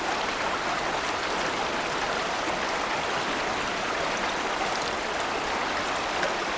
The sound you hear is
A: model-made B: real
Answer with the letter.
B